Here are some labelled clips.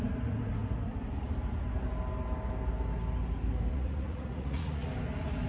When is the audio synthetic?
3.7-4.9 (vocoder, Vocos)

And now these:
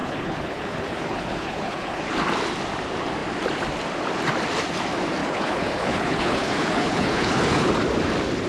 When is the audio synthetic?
0.0-2.0 (codec, HILCodec); 5.2-7.7